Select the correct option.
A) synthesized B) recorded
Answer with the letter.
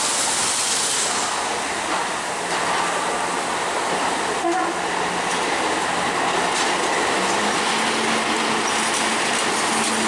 B